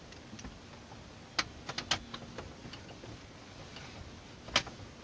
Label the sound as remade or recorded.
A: recorded